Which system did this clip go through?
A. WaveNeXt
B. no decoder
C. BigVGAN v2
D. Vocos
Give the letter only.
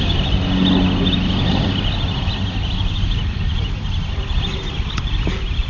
B